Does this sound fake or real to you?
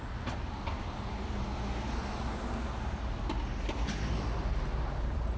real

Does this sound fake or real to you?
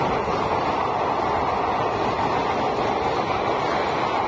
real